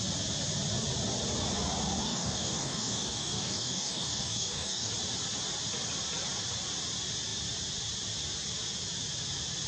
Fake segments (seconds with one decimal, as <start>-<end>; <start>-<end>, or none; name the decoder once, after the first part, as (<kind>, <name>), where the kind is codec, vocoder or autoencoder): 2.0-4.9 (codec, DAC)